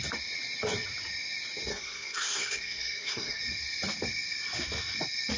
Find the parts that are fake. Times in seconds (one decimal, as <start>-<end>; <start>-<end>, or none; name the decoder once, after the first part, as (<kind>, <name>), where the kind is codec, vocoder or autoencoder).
1.7-3.4 (codec, SNAC)